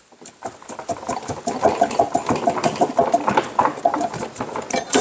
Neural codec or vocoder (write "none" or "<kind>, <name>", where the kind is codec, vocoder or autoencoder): none